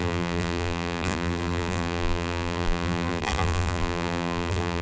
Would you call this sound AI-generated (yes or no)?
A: yes